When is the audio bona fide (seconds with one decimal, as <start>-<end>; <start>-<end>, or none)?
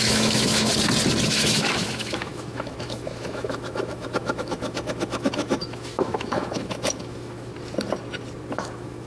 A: 0.7-1.3; 7.5-8.5